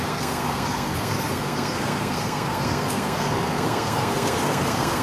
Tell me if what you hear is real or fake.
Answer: fake